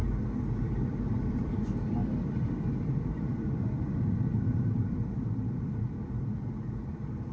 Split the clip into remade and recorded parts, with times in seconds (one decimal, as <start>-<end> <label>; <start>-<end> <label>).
0.0-0.6 recorded; 0.6-7.3 remade